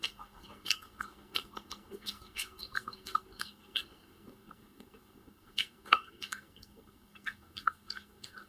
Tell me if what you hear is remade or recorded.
remade